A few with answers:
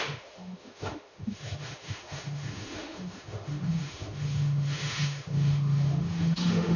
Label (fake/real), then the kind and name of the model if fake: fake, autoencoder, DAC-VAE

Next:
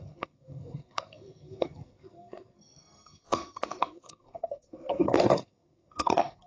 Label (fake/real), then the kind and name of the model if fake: fake, codec, SNAC